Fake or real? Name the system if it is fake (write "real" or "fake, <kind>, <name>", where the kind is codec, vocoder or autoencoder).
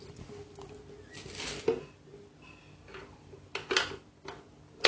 real